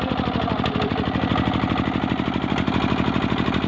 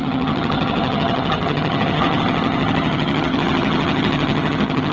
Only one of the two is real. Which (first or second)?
first